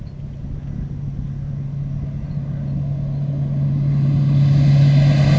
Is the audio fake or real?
real